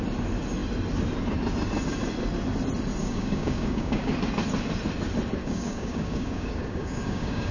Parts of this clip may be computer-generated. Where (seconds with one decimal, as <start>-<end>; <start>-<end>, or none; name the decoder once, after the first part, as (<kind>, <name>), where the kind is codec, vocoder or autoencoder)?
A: 3.0-4.1 (codec, DAC); 5.4-7.5